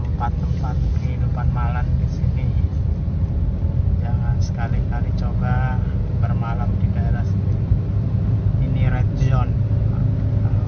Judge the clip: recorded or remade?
recorded